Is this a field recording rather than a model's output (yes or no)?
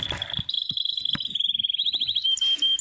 yes